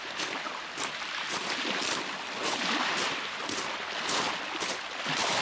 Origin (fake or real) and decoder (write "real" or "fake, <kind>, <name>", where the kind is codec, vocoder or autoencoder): real